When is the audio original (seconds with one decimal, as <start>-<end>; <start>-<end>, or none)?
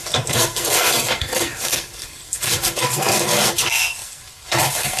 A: none